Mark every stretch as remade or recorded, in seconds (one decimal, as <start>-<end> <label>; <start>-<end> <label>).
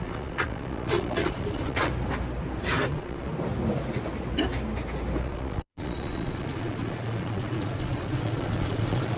0.0-1.9 remade; 1.9-2.9 recorded; 2.9-3.3 remade; 3.3-5.2 recorded; 5.2-9.2 remade